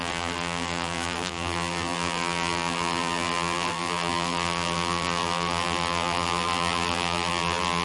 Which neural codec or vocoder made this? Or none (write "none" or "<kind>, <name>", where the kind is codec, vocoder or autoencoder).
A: vocoder, BigVGAN v2